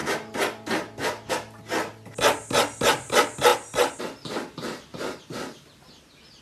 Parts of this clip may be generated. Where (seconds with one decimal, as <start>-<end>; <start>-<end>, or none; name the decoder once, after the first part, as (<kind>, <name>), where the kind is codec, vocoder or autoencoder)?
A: none